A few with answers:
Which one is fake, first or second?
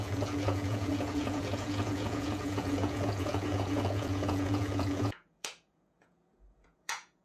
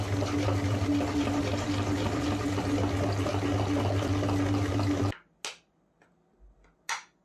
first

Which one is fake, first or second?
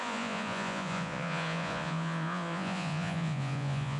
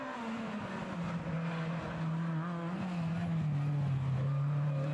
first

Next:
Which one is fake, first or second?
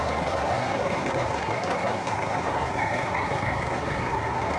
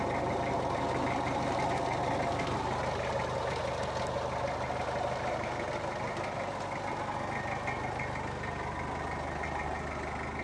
first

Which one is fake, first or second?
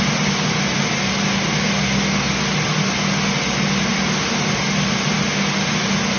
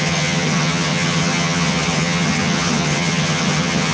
second